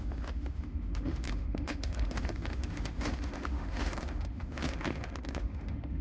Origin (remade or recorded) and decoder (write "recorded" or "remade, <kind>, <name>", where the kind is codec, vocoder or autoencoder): remade, autoencoder, DAC-VAE